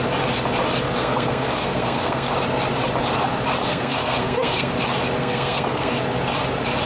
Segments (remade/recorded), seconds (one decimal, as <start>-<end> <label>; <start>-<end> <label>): 0.0-1.0 recorded; 1.0-2.3 remade; 2.3-3.6 recorded; 3.6-4.7 remade; 4.7-5.2 recorded; 5.2-5.9 remade; 5.9-6.9 recorded